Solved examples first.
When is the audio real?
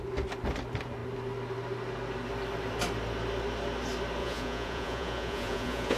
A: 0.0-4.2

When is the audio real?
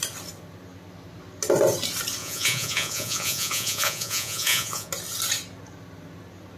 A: 0.0-2.2; 4.9-6.6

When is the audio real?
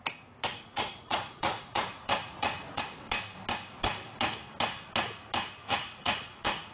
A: 0.0-0.5; 2.8-5.6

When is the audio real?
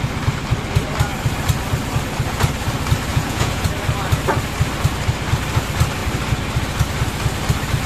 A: 0.0-3.1; 3.7-7.9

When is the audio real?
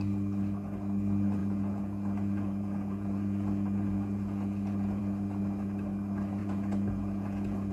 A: 0.0-1.4; 5.0-6.4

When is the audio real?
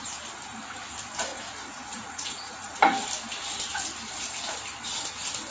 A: 0.0-1.3; 2.8-5.5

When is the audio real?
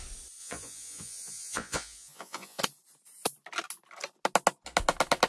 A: 0.0-0.4; 2.6-5.3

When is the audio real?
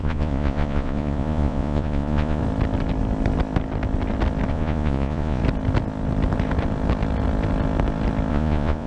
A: 2.4-4.5; 5.4-8.3